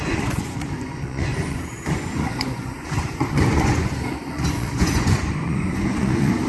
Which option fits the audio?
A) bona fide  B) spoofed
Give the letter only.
B